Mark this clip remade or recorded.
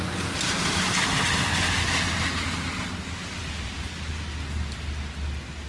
recorded